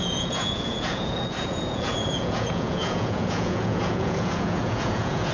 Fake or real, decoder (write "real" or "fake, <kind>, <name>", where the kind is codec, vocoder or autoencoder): fake, vocoder, Vocos